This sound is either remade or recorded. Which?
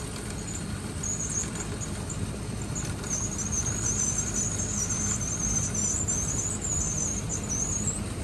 remade